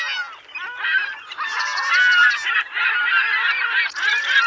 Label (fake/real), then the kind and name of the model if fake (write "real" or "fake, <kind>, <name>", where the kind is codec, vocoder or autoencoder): real